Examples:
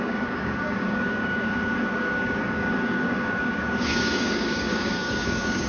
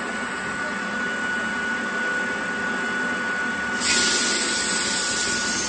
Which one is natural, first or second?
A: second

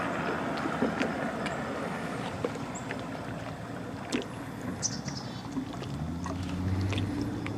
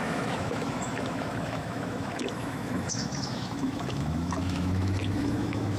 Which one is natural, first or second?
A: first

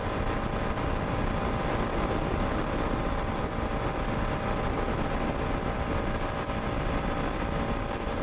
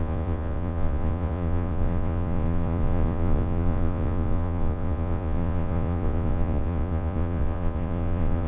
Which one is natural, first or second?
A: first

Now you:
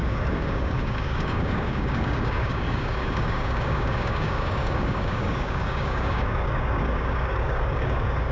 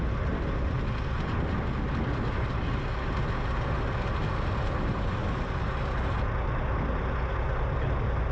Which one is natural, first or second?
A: second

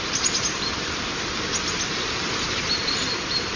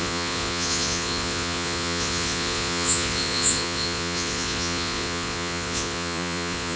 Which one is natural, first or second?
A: first